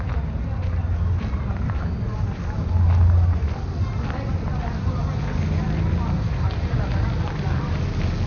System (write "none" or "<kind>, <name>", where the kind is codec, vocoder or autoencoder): none